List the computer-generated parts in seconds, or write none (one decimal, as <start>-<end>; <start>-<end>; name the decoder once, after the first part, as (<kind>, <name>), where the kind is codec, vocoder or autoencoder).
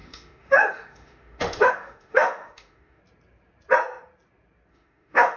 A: 0.0-3.0 (autoencoder, DAC-VAE); 4.7-5.4